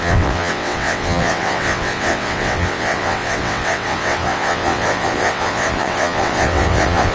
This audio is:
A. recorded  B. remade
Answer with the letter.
B